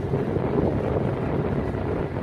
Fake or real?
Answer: real